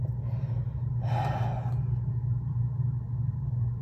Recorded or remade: recorded